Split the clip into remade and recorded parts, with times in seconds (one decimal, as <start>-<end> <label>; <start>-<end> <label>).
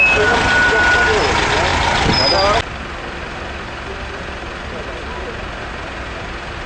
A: 0.0-6.7 recorded